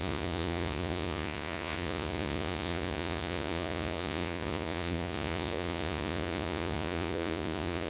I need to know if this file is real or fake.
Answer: fake